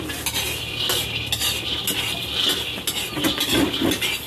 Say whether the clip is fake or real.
real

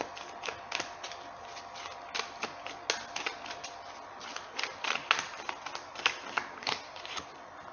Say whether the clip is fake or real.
real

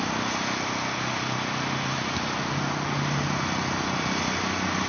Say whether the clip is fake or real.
real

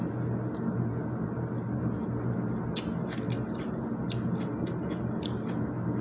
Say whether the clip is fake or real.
real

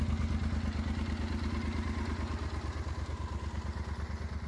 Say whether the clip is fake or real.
real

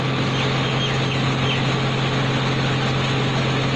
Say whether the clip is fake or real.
real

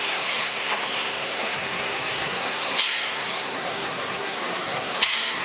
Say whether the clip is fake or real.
fake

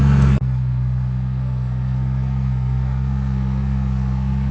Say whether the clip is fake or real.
fake